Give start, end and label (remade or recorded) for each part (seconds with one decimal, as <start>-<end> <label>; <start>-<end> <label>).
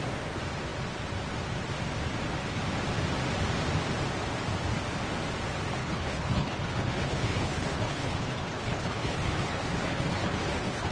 0.0-5.8 recorded; 5.8-10.9 remade